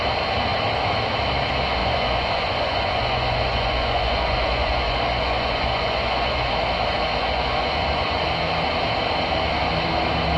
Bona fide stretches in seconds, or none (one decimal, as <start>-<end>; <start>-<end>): 0.0-1.8; 6.5-7.2; 8.2-10.4